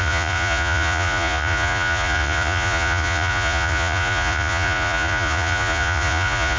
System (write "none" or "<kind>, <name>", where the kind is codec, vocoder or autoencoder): vocoder, Vocos